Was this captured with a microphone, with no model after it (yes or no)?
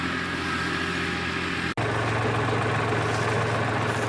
yes